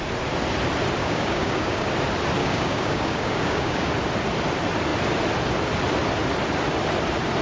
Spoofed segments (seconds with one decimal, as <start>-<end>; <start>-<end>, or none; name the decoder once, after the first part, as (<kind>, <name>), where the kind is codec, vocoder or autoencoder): 1.0-1.9 (codec, DAC); 2.4-3.9